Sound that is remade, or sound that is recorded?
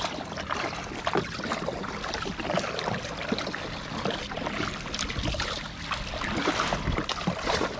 recorded